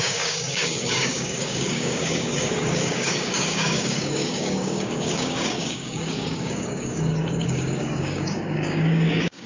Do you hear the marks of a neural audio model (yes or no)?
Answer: yes